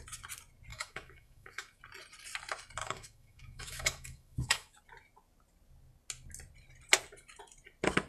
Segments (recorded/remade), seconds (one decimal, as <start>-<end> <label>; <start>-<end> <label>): 0.0-0.7 recorded; 0.7-1.8 remade; 1.8-2.8 recorded; 2.8-4.8 remade; 4.8-8.1 recorded